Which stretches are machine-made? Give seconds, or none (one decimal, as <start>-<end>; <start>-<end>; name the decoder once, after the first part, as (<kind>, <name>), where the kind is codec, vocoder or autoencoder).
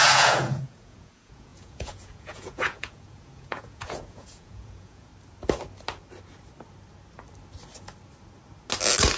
0.0-5.1 (vocoder, Vocos)